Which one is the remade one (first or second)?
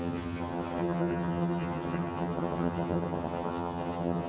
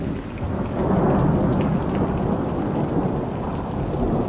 first